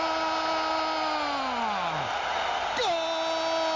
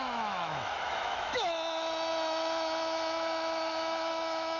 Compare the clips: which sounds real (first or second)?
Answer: first